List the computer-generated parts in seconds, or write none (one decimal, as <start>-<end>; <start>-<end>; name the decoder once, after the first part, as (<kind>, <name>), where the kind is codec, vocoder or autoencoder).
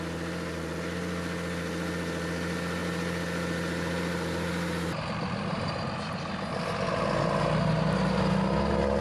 2.8-5.0 (vocoder, BigVGAN v2); 5.5-6.3